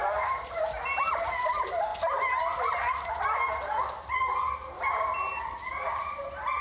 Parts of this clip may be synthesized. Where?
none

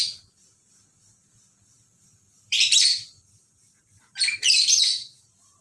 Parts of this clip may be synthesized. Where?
0.4-3.8 (vocoder, BigVGAN v2); 4.9-5.6